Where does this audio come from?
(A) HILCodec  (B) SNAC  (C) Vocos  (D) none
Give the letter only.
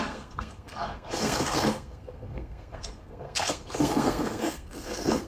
B